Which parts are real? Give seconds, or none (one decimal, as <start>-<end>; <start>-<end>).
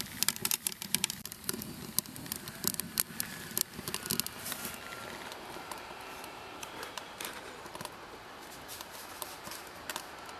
0.0-0.4; 1.7-5.3; 7.7-8.7; 9.9-10.4